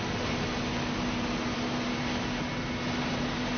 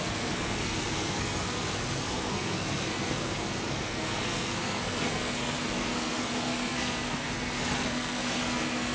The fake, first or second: second